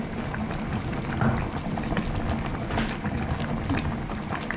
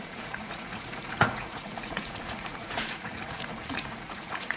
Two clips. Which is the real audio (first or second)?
first